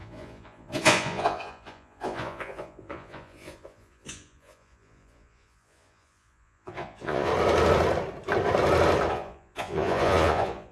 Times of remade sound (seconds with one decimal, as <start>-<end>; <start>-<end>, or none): 0.0-7.3; 9.1-10.7